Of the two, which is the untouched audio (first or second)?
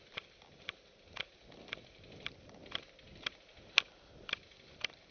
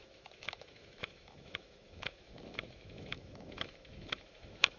first